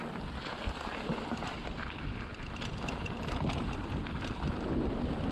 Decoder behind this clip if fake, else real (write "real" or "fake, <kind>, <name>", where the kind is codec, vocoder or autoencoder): real